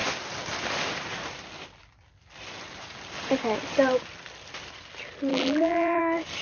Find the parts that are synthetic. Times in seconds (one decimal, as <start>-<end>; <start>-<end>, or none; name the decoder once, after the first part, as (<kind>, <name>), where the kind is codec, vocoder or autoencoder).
5.3-6.0 (vocoder, BigVGAN v2)